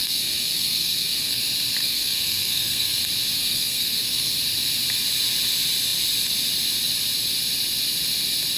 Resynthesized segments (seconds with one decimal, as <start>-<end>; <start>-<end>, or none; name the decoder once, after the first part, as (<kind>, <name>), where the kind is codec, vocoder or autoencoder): 0.0-1.4 (codec, SNAC); 1.8-3.0; 3.4-4.3